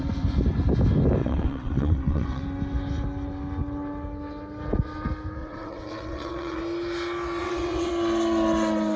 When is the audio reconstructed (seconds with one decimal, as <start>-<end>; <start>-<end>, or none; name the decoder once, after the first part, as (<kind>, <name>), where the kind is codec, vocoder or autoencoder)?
1.2-2.4 (vocoder, WaveNeXt); 5.4-6.6; 7.4-7.9